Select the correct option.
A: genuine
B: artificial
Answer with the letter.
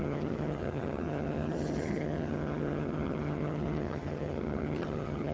B